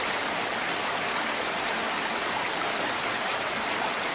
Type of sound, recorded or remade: recorded